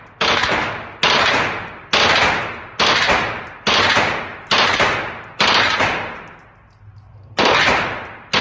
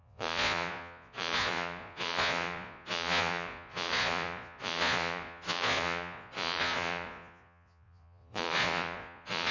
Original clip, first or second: first